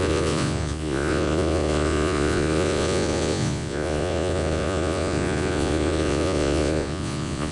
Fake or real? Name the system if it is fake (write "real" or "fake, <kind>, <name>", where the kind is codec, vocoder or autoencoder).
fake, vocoder, Vocos